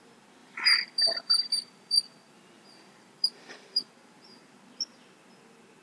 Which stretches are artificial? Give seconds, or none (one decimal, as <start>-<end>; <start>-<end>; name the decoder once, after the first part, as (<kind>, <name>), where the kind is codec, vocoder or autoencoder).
0.4-3.9 (vocoder, BigVGAN v2)